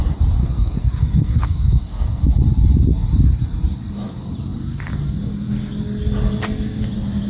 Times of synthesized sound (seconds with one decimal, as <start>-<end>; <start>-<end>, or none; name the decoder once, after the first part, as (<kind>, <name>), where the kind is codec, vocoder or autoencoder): 0.4-2.2 (codec, SNAC)

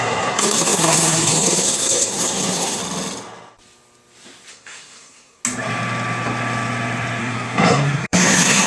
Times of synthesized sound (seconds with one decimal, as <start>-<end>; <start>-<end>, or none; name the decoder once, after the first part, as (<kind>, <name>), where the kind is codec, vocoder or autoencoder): 0.0-2.8 (codec, SNAC); 4.5-5.4; 7.2-8.7